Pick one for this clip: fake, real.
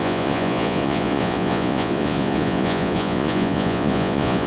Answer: fake